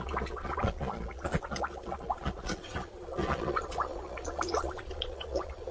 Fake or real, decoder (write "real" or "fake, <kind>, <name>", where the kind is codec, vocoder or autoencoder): fake, vocoder, Vocos